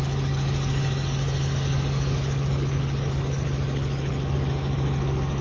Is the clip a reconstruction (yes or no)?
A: yes